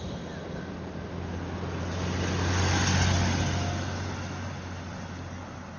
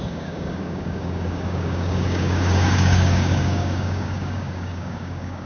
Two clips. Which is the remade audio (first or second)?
second